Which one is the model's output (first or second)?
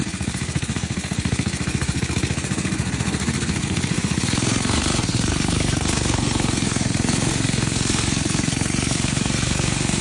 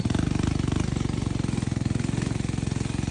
first